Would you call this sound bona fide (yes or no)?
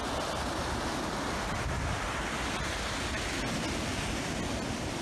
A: yes